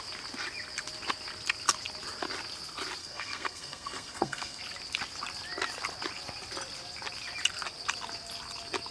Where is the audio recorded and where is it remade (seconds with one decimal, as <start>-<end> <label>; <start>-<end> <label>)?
0.0-3.0 recorded; 3.0-4.6 remade; 4.6-8.9 recorded